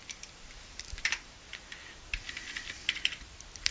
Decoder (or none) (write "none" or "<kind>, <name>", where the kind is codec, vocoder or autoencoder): vocoder, BigVGAN v2